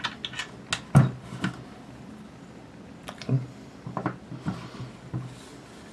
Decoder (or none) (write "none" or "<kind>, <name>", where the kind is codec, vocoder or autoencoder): none